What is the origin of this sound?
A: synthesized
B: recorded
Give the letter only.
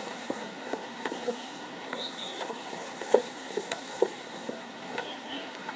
A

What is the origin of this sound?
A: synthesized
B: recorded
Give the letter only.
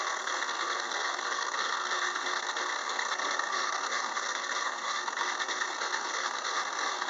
A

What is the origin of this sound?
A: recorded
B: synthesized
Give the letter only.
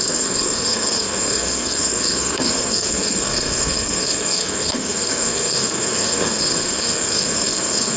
B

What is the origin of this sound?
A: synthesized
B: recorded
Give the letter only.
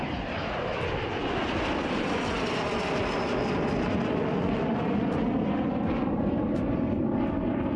B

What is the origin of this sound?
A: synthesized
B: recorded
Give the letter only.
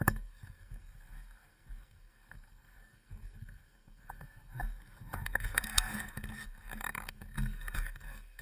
A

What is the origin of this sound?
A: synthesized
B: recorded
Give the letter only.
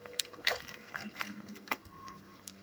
A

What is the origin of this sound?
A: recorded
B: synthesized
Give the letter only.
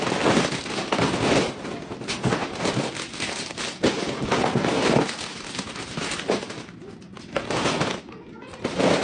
A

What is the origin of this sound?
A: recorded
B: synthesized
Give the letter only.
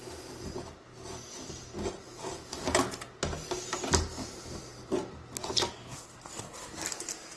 A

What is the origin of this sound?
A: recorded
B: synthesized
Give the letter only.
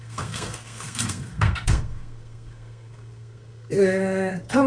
B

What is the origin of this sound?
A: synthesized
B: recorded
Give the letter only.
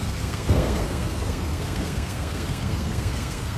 A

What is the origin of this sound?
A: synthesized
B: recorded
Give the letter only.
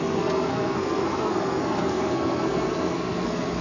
A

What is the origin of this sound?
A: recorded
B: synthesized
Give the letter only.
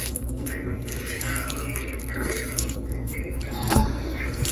B